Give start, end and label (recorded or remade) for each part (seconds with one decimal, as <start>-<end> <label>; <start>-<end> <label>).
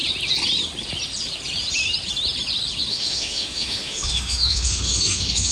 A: 0.0-2.9 recorded; 2.9-5.5 remade